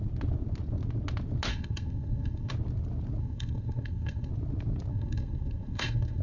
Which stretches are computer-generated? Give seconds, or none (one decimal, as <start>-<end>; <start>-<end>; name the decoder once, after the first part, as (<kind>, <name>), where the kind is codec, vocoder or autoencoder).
1.5-2.5 (codec, SNAC); 3.2-4.3; 4.9-6.2